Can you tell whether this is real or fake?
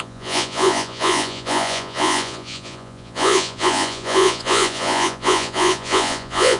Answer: fake